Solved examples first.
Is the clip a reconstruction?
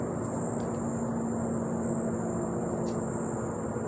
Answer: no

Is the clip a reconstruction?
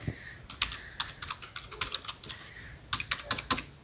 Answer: no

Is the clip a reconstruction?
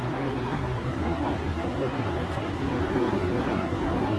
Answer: yes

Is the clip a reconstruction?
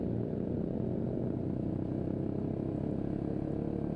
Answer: no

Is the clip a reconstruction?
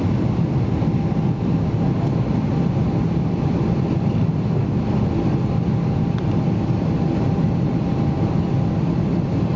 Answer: no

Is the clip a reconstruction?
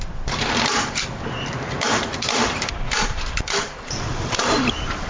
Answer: yes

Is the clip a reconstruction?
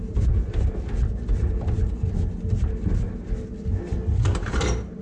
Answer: no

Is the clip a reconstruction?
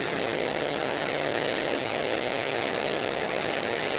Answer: yes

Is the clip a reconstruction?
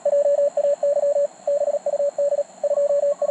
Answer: no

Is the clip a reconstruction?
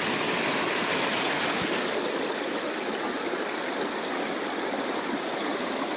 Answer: no